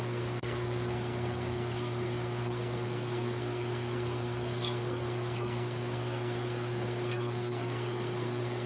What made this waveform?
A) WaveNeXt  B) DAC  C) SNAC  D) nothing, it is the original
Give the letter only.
C